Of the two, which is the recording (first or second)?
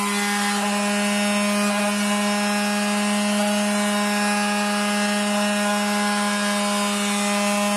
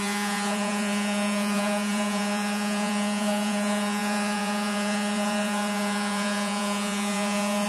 first